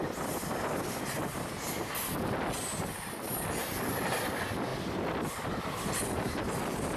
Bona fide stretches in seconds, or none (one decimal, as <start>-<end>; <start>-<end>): 2.0-4.7; 5.6-7.0